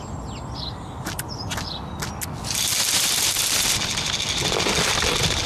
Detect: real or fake real